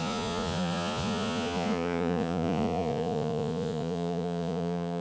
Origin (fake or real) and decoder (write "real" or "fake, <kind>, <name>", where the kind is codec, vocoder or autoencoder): fake, vocoder, Vocos